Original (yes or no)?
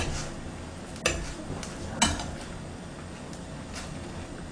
yes